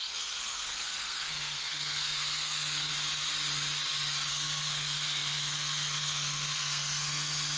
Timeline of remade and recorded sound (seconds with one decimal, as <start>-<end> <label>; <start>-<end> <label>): 0.0-2.9 remade; 2.9-4.3 recorded; 4.3-7.6 remade